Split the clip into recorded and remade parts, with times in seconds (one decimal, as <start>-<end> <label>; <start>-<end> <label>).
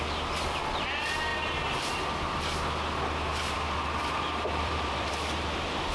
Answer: 0.0-1.3 recorded; 1.3-2.4 remade; 2.4-3.3 recorded; 3.3-5.2 remade; 5.2-5.9 recorded